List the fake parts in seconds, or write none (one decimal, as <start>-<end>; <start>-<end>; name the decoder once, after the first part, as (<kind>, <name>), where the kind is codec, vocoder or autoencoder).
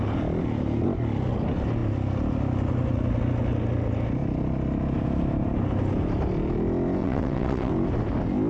7.0-7.7 (vocoder, WaveNeXt)